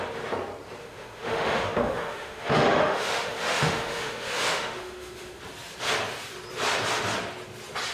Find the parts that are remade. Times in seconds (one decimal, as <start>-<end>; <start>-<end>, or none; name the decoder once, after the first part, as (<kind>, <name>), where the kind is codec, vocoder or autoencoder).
0.8-5.4 (autoencoder, DAC-VAE)